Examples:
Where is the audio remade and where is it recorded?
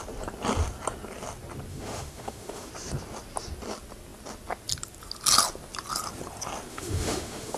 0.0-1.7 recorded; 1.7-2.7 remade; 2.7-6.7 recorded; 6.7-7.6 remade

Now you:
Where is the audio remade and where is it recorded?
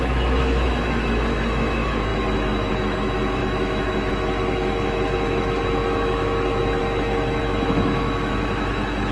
0.0-9.1 remade